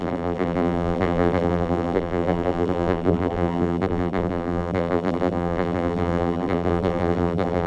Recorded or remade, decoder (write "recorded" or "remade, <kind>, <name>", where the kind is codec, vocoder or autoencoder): remade, vocoder, BigVGAN v2